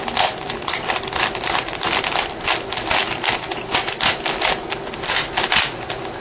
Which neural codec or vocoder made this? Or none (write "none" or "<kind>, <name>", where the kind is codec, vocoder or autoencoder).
none